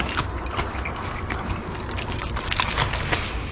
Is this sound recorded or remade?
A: recorded